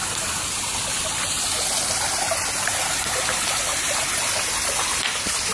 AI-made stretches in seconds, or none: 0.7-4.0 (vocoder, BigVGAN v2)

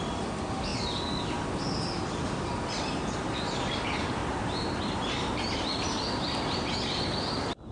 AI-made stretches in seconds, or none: 4.2-5.6 (vocoder, BigVGAN v2)

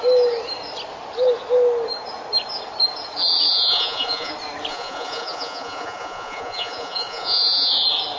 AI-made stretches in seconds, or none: 3.5-4.3 (vocoder, Vocos); 4.7-7.7